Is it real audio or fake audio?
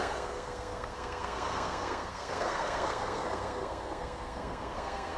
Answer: fake